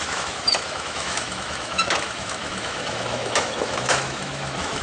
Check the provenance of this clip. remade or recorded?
remade